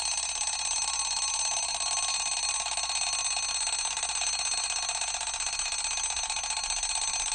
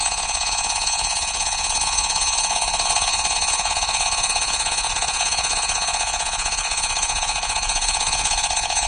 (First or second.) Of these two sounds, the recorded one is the first